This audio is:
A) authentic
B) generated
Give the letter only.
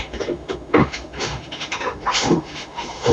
B